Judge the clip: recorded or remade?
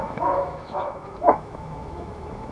remade